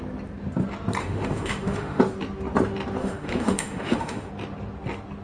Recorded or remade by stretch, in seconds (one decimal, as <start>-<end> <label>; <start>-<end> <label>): 0.0-1.0 recorded; 1.0-2.0 remade; 2.0-3.0 recorded; 3.0-4.3 remade; 4.3-5.2 recorded